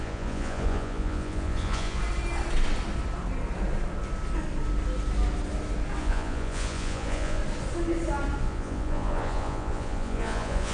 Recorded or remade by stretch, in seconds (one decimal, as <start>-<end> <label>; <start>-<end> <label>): 0.0-2.0 remade; 2.0-6.0 recorded; 6.0-7.4 remade; 7.4-8.4 recorded; 8.4-10.7 remade